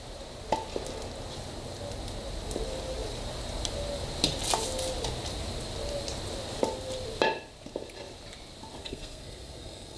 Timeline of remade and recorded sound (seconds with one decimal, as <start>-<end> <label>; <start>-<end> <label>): 0.0-8.8 recorded; 8.8-10.0 remade